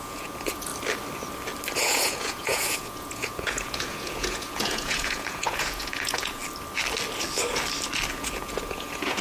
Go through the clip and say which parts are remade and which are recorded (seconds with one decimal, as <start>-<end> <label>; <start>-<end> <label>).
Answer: 0.0-0.7 remade; 0.7-1.8 recorded; 1.8-6.4 remade; 6.4-8.1 recorded; 8.1-9.2 remade